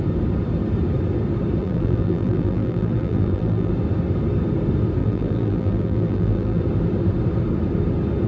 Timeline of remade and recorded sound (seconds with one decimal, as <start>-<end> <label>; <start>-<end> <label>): 0.0-1.6 recorded; 1.6-3.7 remade; 3.7-5.0 recorded; 5.0-6.6 remade; 6.6-8.3 recorded